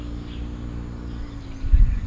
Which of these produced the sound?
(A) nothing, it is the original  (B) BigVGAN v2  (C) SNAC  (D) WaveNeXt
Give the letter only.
A